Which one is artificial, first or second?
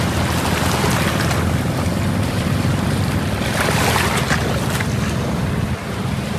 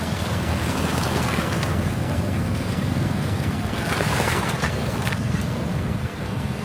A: second